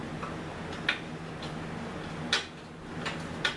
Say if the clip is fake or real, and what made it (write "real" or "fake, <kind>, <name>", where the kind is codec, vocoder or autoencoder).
real